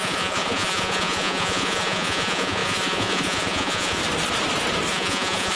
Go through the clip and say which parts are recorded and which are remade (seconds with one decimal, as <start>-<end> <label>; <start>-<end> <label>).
0.0-4.0 remade; 4.0-4.9 recorded; 4.9-5.6 remade